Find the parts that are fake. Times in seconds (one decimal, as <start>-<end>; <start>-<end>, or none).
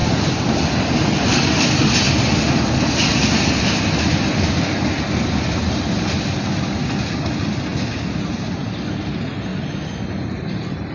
0.0-0.6; 3.1-3.8; 7.7-8.3; 9.5-10.9